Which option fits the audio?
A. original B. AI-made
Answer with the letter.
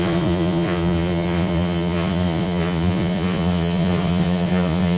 B